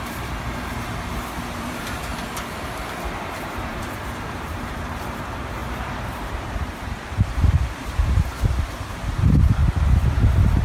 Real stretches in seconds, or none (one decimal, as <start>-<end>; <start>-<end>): 2.1-3.1; 9.6-10.6